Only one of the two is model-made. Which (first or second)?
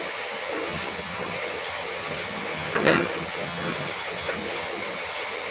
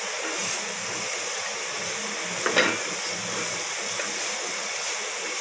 first